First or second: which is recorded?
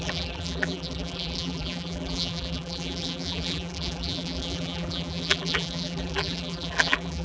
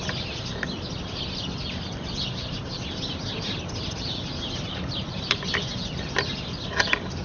second